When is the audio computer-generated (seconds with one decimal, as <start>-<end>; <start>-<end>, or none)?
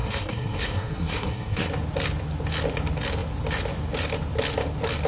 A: 0.0-1.7